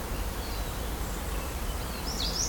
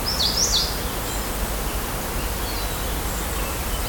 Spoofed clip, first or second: first